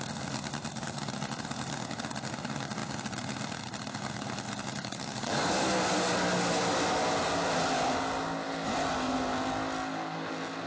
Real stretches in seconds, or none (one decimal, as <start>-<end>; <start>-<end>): 0.0-4.8; 5.7-10.7